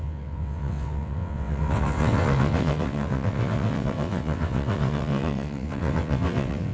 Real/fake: fake